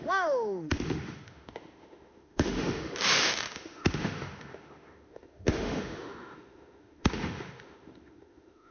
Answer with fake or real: fake